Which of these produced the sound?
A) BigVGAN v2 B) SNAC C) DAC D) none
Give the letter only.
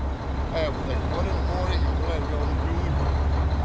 D